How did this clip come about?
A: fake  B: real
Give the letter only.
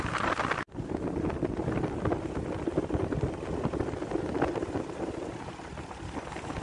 B